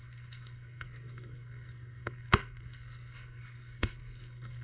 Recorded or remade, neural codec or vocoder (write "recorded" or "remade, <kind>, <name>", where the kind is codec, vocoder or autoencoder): remade, codec, SNAC